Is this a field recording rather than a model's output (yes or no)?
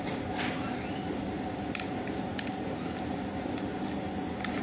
yes